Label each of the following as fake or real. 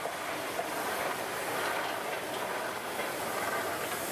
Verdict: real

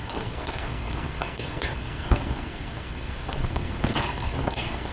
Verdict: fake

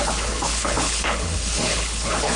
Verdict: fake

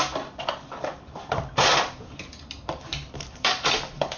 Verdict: fake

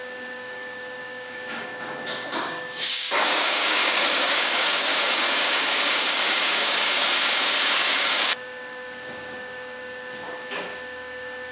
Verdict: fake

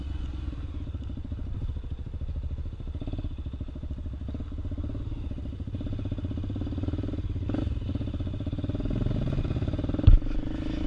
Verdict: real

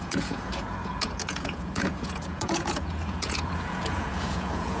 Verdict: fake